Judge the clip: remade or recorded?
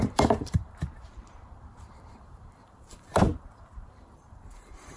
remade